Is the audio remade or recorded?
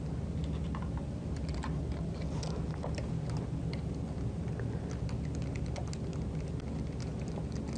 recorded